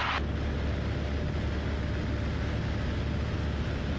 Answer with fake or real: real